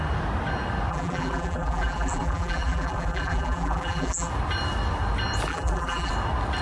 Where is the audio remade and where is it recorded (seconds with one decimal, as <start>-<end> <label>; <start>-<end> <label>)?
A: 0.0-0.9 recorded; 0.9-4.3 remade; 4.3-5.5 recorded; 5.5-6.1 remade; 6.1-6.6 recorded